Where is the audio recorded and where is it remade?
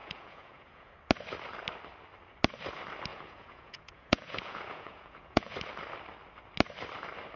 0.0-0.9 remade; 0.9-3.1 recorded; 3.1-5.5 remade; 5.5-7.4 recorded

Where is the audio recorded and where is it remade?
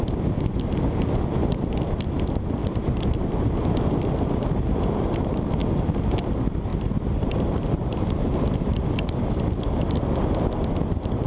0.0-2.6 recorded; 2.6-3.7 remade; 3.7-6.7 recorded; 6.7-9.1 remade; 9.1-11.3 recorded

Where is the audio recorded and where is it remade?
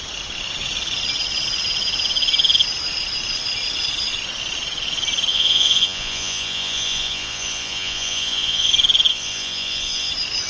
0.0-5.3 recorded; 5.3-8.7 remade; 8.7-9.1 recorded; 9.1-10.1 remade; 10.1-10.5 recorded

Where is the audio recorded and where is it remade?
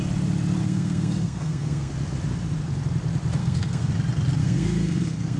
0.0-0.6 recorded; 0.6-1.9 remade; 1.9-3.4 recorded; 3.4-3.9 remade; 3.9-4.4 recorded; 4.4-5.4 remade